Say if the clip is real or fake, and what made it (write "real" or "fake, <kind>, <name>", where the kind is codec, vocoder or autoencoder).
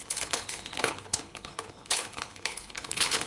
fake, codec, HILCodec